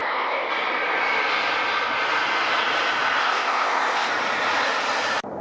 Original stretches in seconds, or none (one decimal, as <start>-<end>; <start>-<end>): 0.5-3.2; 4.1-5.4